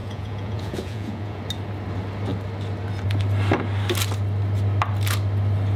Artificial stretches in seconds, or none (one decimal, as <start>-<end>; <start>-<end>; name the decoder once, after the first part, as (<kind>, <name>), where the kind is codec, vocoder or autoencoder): 0.0-1.4 (vocoder, Vocos)